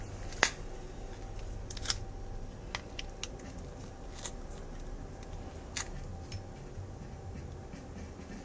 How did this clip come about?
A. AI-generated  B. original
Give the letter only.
B